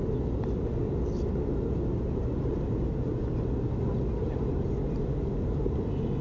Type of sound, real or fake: real